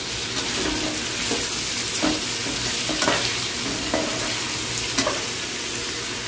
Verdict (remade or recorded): recorded